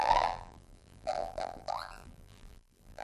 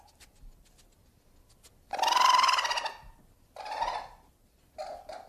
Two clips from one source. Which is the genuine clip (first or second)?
second